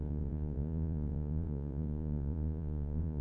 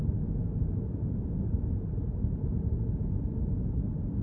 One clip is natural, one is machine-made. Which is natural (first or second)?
second